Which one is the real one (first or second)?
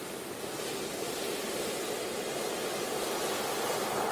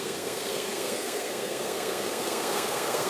first